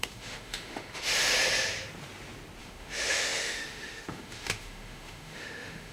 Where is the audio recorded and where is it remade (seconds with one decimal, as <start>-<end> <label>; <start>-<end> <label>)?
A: 0.0-1.1 remade; 1.1-2.6 recorded; 2.6-5.9 remade